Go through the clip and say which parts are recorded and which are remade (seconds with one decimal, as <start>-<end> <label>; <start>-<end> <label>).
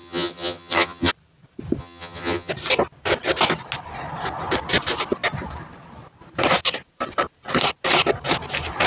0.0-1.1 remade; 1.1-1.8 recorded; 1.8-2.5 remade; 2.5-8.9 recorded